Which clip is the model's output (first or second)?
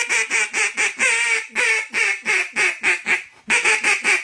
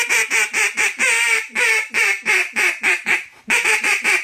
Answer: second